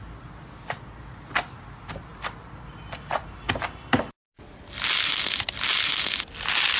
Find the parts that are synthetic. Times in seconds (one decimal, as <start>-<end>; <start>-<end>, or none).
none